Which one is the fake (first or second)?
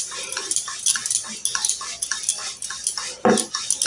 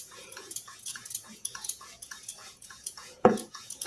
second